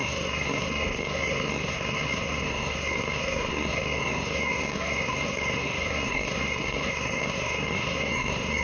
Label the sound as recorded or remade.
remade